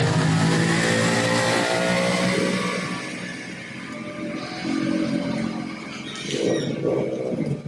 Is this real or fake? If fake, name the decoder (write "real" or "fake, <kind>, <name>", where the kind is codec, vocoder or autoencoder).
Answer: real